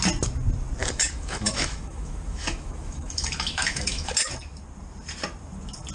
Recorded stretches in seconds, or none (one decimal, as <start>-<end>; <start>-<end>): 0.0-0.8; 4.3-5.9